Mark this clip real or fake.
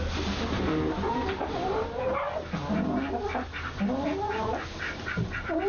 real